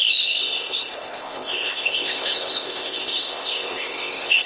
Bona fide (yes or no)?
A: no